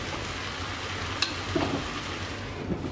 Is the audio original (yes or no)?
yes